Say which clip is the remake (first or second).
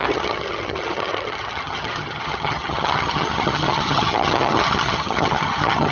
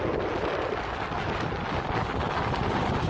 first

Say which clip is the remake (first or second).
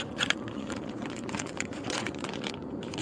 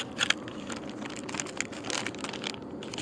first